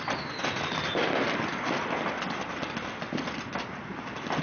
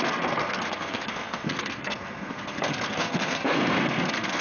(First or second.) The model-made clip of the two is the second